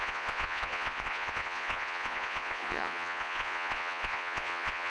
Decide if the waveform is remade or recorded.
remade